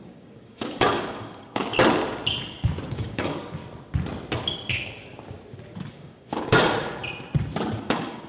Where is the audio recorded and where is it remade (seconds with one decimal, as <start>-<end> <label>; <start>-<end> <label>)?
0.0-1.7 remade; 1.7-2.9 recorded; 2.9-3.6 remade; 3.6-5.9 recorded; 5.9-7.0 remade; 7.0-7.8 recorded; 7.8-8.3 remade